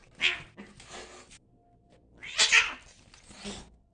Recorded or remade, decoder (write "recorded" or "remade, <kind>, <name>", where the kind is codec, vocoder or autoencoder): recorded